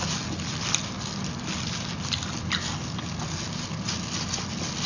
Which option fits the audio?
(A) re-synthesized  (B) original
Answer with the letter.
B